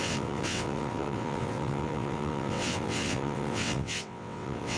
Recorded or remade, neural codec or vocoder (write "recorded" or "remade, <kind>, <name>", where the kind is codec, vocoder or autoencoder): remade, vocoder, WaveNeXt